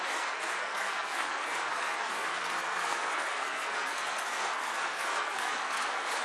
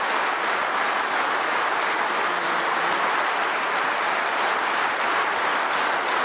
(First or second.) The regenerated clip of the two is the first